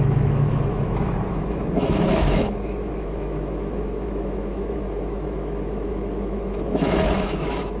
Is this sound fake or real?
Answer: fake